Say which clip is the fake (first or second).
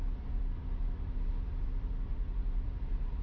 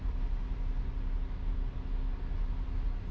first